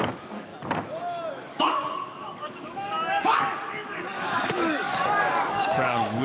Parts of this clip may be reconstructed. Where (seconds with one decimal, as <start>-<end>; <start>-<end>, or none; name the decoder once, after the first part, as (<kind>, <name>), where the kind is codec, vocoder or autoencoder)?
0.0-0.5 (codec, DAC); 1.3-6.2